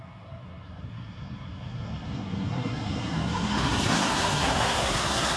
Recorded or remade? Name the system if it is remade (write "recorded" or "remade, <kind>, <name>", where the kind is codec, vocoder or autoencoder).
remade, codec, SNAC